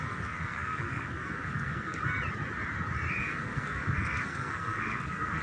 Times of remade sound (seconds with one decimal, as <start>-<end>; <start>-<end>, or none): 0.0-2.0; 3.2-5.4